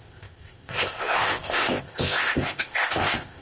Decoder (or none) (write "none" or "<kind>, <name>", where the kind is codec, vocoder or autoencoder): codec, ZipCodec